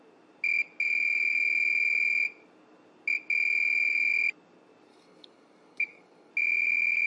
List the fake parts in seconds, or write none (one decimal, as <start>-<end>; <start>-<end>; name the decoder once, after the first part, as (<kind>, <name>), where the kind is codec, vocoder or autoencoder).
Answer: 4.9-6.3 (codec, DAC)